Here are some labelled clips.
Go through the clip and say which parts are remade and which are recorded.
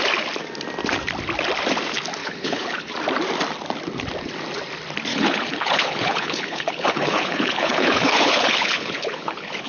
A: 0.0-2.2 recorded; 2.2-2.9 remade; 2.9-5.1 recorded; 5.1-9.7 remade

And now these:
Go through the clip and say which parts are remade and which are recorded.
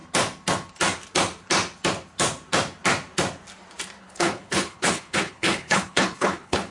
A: 0.0-4.0 recorded; 4.0-6.7 remade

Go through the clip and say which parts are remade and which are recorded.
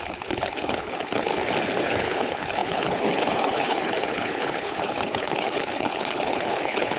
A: 0.0-1.3 remade; 1.3-1.8 recorded; 1.8-7.0 remade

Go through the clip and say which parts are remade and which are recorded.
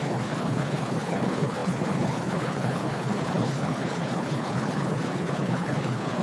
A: 0.0-6.2 remade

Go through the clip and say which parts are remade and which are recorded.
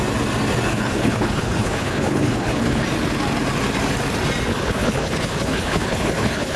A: 0.0-0.7 recorded; 0.7-2.8 remade; 2.8-4.5 recorded; 4.5-6.6 remade